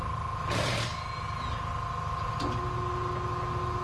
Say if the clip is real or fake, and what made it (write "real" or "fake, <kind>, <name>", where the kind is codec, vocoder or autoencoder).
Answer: real